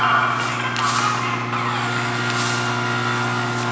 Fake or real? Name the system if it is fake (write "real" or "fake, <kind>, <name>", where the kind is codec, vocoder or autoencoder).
real